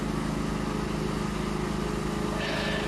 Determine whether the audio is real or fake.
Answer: real